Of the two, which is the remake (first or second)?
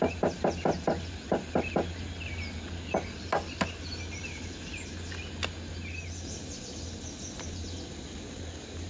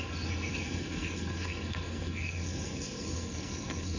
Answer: second